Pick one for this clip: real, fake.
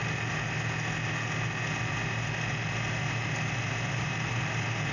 real